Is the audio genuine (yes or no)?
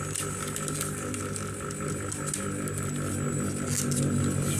yes